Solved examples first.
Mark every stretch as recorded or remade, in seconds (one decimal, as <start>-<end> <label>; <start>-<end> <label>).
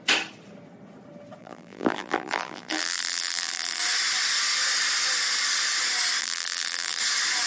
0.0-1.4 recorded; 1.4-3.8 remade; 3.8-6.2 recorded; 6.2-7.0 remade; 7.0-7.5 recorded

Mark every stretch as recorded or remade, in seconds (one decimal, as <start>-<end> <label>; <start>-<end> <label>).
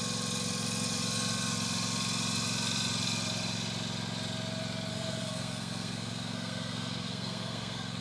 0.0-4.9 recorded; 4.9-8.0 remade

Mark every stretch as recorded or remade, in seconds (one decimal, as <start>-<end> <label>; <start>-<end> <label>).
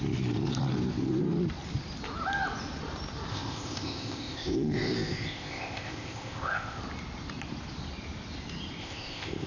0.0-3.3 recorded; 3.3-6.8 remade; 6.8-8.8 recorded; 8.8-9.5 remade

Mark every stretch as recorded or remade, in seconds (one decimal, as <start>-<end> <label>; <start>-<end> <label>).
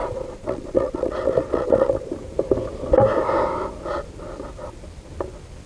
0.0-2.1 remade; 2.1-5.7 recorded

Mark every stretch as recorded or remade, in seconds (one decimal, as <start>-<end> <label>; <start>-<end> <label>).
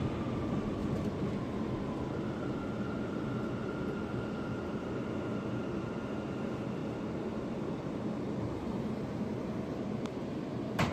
0.0-10.9 recorded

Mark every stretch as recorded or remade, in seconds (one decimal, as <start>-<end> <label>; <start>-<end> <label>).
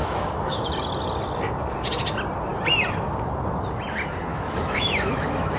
0.0-0.7 remade; 0.7-4.3 recorded; 4.3-5.6 remade